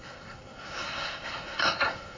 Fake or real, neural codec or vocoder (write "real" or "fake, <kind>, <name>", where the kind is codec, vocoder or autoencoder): fake, codec, SNAC